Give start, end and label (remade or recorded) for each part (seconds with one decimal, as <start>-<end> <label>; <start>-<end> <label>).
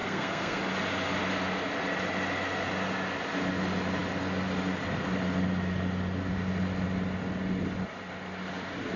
0.0-0.6 remade; 0.6-9.0 recorded